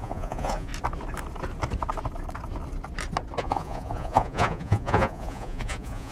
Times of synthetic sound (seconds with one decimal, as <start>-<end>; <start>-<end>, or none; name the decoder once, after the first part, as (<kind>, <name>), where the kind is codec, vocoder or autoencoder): 0.0-0.7 (vocoder, Vocos); 3.4-6.1